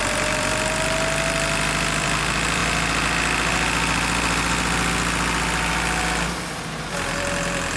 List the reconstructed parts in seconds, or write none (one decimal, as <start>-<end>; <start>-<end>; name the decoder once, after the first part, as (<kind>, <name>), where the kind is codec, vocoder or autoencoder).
0.0-2.6 (vocoder, BigVGAN v2); 6.8-7.8